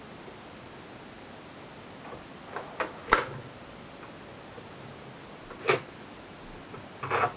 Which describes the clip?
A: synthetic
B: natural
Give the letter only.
B